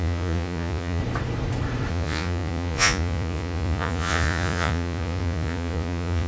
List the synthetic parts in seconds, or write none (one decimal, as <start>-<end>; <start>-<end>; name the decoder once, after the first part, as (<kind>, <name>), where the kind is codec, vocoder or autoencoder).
0.0-1.0 (vocoder, Vocos); 1.9-6.3